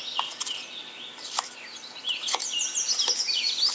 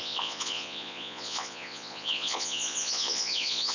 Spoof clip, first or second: second